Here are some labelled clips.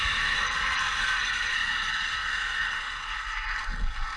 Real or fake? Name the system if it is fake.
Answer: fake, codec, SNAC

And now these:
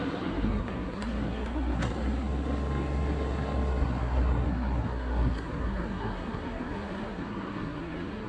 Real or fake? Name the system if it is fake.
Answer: fake, codec, SNAC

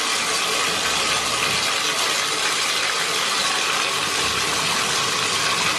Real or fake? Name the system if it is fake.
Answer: real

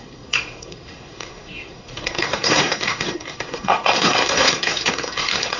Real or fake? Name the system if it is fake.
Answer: fake, codec, SNAC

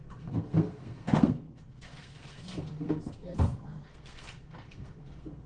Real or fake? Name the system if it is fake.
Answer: fake, codec, SNAC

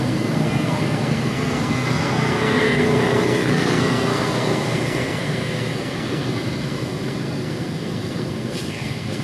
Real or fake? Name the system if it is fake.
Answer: fake, codec, SNAC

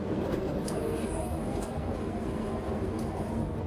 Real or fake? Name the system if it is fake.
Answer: fake, codec, SNAC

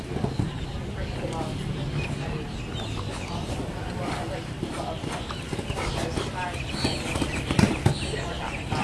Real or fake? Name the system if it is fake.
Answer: real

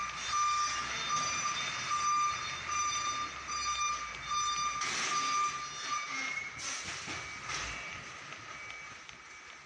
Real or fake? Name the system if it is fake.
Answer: real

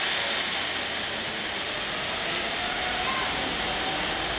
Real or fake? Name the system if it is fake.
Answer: real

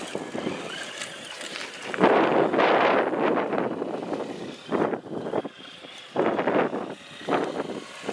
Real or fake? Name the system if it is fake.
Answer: real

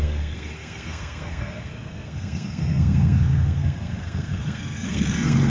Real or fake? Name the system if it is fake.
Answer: fake, codec, SNAC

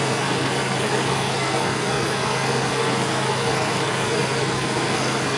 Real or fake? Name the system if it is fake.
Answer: fake, codec, SNAC